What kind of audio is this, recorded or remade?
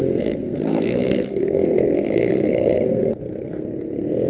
remade